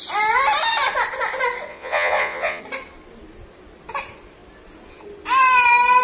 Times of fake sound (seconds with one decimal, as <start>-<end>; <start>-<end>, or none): 1.7-2.6